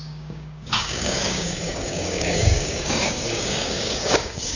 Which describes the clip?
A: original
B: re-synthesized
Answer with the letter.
B